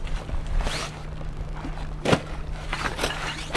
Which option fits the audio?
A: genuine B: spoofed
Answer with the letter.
A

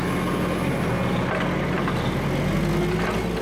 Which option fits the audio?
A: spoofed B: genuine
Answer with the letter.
B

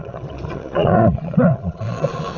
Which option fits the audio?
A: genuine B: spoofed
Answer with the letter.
B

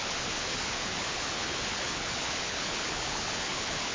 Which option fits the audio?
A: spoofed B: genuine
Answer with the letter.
A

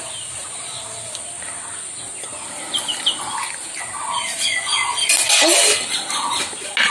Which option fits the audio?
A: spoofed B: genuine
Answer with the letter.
B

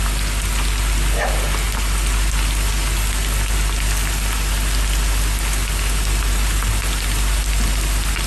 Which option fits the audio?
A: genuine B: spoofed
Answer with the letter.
A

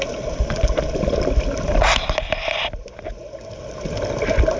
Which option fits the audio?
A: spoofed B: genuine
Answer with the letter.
B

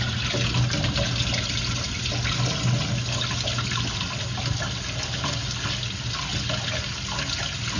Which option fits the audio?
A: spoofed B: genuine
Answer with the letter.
B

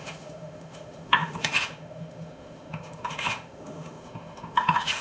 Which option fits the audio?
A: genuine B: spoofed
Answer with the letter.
B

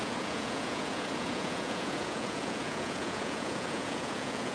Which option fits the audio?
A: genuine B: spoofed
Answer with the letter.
B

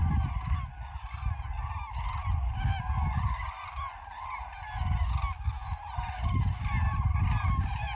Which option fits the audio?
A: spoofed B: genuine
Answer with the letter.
B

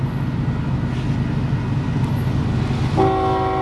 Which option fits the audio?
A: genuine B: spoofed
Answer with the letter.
A